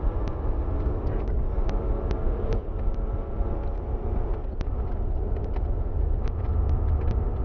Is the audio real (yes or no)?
yes